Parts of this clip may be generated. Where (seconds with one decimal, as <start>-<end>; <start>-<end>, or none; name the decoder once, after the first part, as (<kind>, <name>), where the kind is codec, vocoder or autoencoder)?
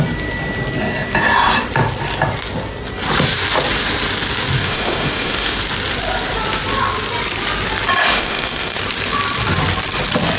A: 4.6-5.6 (autoencoder, DAC-VAE); 8.0-8.8